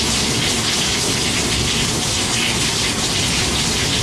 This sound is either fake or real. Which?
real